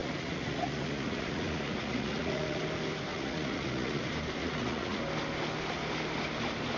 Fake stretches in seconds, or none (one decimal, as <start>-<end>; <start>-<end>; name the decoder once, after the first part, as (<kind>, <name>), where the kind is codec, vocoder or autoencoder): 0.0-2.6 (vocoder, Vocos); 3.1-4.0; 4.4-5.0